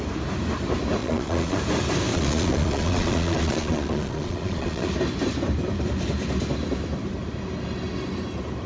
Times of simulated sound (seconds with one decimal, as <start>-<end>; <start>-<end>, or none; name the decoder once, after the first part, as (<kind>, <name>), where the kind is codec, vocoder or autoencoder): 1.0-1.6 (vocoder, Vocos); 2.1-4.9